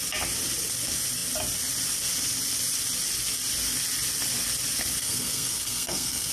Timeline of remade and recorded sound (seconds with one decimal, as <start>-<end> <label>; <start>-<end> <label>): 0.0-5.0 recorded; 5.0-6.3 remade